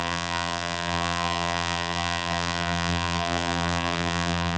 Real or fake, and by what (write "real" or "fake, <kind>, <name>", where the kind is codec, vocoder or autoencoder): fake, vocoder, BigVGAN v2